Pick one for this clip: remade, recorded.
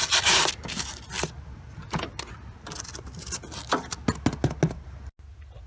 recorded